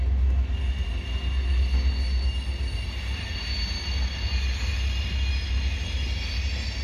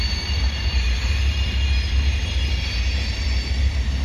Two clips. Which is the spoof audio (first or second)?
second